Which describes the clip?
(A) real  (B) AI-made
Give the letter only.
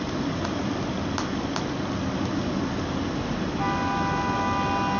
A